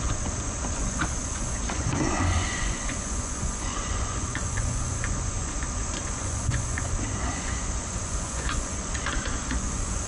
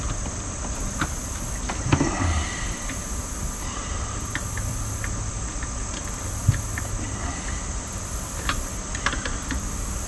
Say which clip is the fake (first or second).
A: first